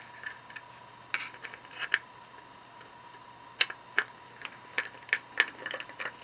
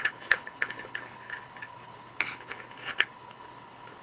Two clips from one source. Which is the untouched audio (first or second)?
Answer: first